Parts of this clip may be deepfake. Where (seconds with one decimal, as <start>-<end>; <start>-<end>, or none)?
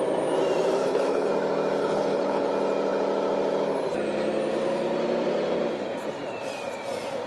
0.8-1.3; 1.8-2.5